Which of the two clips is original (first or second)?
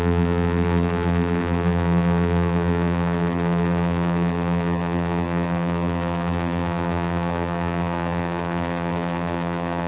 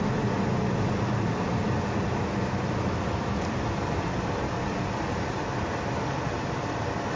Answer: second